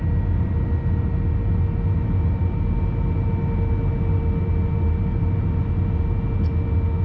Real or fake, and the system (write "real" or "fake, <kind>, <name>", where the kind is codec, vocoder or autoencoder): real